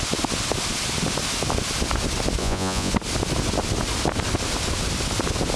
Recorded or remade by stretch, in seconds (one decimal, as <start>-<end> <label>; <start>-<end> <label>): 0.0-2.4 recorded; 2.4-2.9 remade; 2.9-5.6 recorded